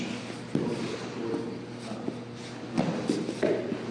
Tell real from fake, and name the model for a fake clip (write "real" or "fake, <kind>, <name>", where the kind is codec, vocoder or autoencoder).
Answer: real